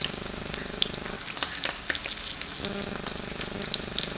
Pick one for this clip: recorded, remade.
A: recorded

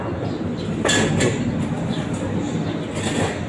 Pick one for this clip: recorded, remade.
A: recorded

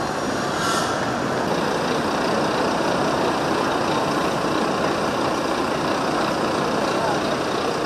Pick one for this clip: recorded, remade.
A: recorded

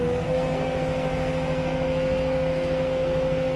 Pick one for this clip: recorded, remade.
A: remade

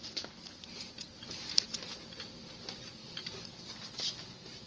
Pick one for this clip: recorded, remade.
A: recorded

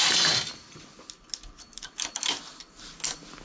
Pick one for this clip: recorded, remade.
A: recorded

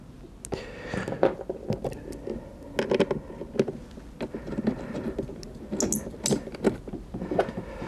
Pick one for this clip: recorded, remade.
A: recorded